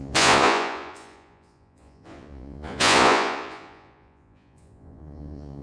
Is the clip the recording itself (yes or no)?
no